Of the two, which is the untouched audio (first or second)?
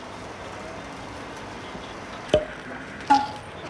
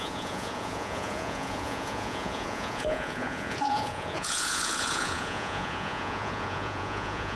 first